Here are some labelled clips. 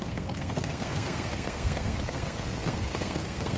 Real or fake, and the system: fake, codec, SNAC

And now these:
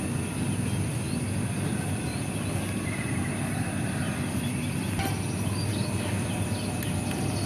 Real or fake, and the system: real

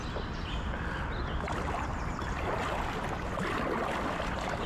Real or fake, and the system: real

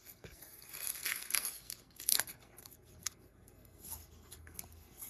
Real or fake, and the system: fake, codec, SNAC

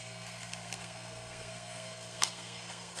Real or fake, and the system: fake, codec, SNAC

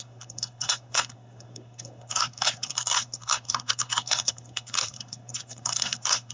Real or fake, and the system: fake, codec, SNAC